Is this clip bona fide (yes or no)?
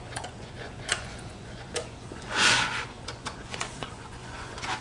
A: no